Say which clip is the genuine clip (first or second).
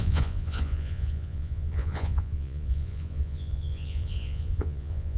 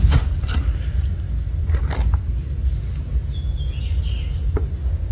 second